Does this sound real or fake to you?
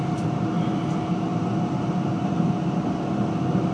real